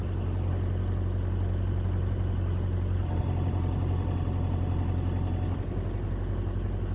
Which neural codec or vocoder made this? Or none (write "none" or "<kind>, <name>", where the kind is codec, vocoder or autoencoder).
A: none